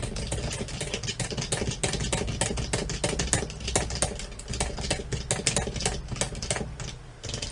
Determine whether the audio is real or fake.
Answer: real